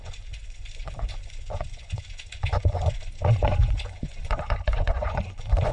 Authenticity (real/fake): fake